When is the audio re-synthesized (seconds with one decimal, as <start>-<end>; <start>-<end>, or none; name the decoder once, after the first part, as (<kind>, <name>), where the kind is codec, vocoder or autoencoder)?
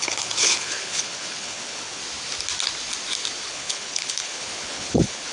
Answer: 0.0-2.0 (codec, HILCodec); 3.5-5.3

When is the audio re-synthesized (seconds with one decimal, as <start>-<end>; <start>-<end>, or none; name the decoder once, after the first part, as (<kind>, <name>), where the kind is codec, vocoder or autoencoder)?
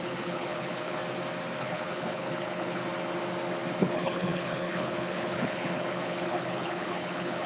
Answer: 0.0-1.0 (codec, HILCodec); 1.6-2.8; 3.8-7.5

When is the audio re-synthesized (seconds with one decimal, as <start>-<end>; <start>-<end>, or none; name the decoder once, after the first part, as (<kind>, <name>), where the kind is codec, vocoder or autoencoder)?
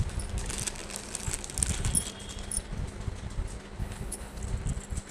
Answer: 3.8-4.4 (codec, HILCodec)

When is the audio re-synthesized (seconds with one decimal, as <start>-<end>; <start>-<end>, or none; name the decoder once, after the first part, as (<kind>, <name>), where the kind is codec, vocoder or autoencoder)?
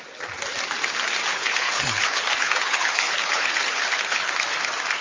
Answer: 1.3-4.3 (codec, HILCodec)